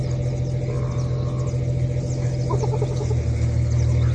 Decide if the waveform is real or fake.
real